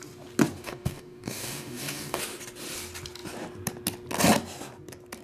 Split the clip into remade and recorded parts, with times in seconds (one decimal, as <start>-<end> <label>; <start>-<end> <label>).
0.0-0.6 recorded; 0.6-2.2 remade; 2.2-5.2 recorded